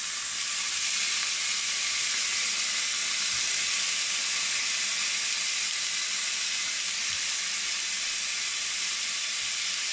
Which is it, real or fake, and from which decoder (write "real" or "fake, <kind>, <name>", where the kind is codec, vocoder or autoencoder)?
real